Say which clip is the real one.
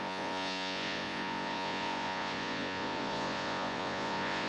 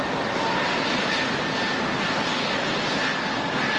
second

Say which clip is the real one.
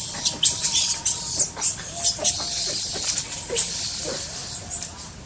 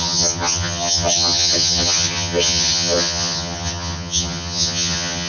first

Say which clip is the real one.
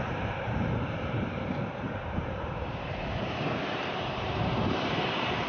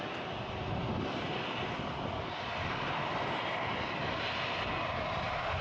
second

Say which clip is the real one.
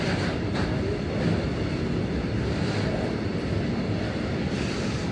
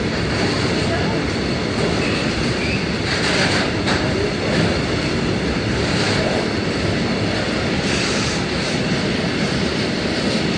first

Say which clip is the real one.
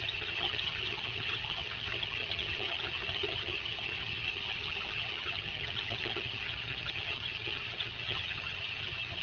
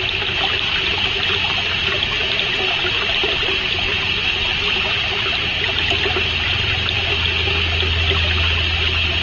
second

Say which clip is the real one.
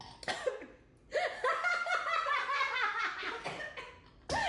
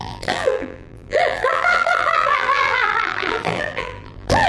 first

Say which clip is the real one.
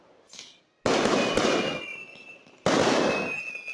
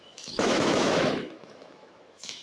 first